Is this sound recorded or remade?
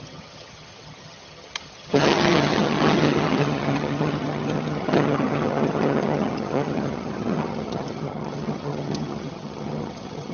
remade